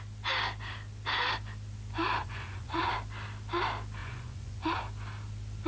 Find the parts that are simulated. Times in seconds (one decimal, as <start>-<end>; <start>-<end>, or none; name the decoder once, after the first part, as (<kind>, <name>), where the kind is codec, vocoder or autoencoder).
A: 2.2-2.9 (vocoder, Vocos); 4.0-4.8